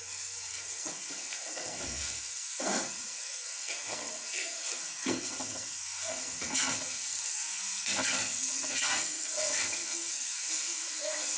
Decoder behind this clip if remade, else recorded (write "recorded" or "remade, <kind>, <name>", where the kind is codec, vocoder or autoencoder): remade, codec, SNAC